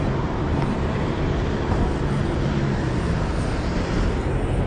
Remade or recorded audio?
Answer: recorded